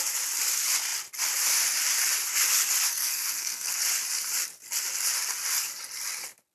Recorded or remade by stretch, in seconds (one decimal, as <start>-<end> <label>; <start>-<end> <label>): 0.0-2.9 recorded; 2.9-3.8 remade; 3.8-6.5 recorded